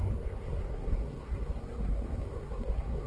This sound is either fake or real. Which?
fake